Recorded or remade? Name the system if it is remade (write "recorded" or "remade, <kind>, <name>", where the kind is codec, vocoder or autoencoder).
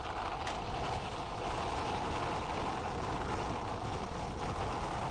recorded